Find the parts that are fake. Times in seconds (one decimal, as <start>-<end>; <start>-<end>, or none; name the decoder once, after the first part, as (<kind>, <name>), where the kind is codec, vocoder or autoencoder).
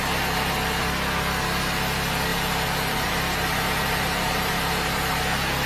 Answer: 2.3-5.2 (vocoder, BigVGAN v2)